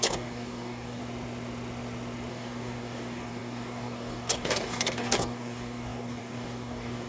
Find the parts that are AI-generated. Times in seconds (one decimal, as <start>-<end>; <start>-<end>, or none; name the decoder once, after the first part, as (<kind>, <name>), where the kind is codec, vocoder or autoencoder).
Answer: 0.0-1.0 (codec, DAC); 2.3-7.1